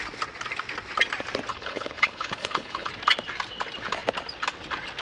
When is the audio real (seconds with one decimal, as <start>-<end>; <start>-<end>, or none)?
0.0-1.5; 2.9-5.0